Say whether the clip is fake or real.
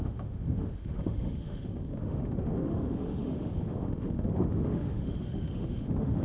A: fake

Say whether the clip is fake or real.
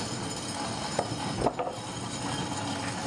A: real